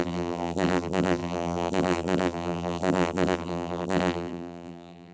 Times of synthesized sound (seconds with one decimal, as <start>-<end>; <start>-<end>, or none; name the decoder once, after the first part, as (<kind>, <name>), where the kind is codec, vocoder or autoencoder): 0.0-5.1 (vocoder, BigVGAN v2)